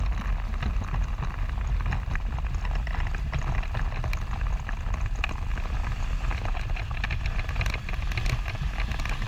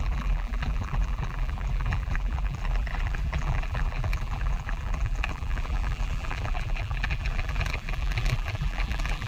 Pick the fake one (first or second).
second